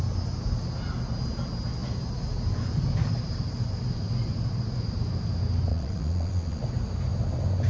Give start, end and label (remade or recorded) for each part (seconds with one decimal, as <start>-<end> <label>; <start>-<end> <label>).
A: 0.0-5.7 recorded; 5.7-6.6 remade; 6.6-7.7 recorded